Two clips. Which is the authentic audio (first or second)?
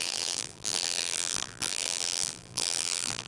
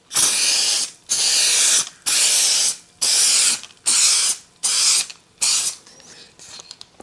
second